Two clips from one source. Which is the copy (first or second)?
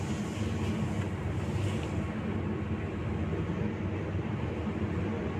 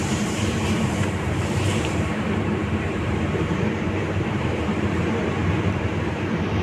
second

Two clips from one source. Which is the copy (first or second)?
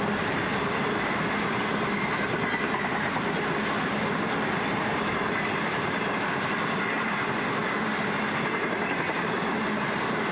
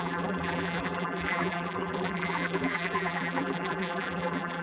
second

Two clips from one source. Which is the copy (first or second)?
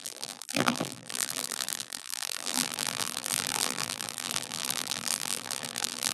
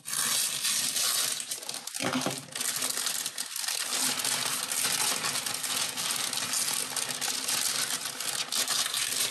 first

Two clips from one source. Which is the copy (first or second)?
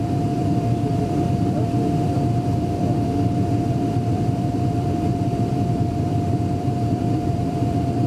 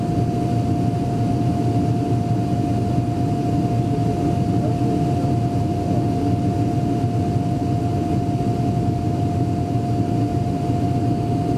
first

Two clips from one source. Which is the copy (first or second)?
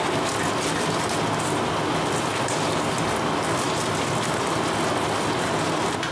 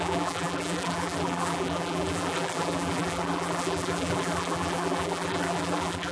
second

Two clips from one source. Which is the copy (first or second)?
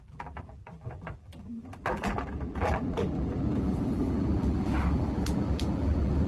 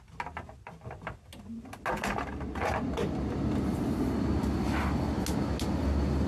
first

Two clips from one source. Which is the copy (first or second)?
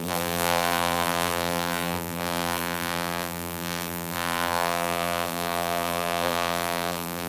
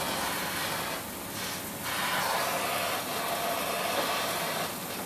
first